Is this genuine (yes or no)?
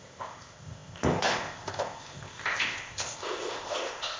no